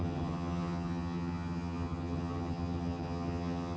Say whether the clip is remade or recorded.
remade